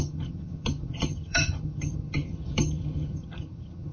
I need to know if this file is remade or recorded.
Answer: remade